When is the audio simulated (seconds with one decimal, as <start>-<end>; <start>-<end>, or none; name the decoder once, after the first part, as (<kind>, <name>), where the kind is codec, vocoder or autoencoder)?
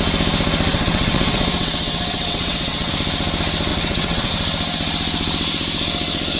0.7-2.9 (vocoder, WaveNeXt); 3.7-4.3